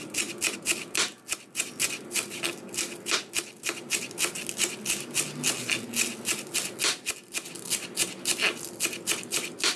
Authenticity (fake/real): real